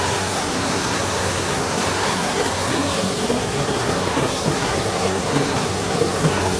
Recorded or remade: remade